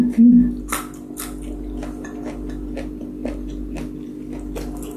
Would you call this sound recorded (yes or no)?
yes